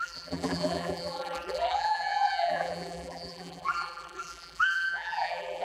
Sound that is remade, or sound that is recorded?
remade